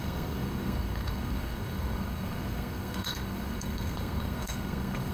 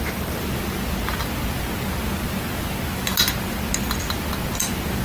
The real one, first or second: second